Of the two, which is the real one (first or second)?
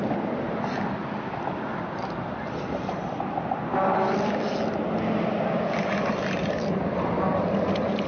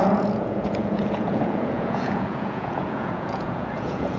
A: first